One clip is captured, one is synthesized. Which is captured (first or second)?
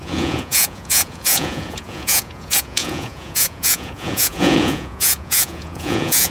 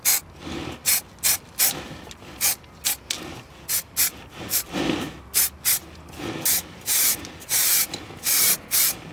second